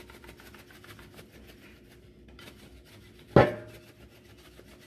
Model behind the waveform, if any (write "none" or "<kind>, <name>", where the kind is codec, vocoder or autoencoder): none